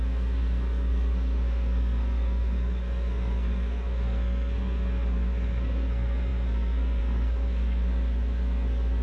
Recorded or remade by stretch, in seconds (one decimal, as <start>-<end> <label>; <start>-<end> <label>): 0.0-9.0 remade